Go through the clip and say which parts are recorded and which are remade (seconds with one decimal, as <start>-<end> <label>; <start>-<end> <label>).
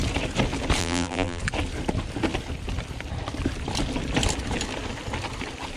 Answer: 0.0-0.8 recorded; 0.8-1.4 remade; 1.4-5.8 recorded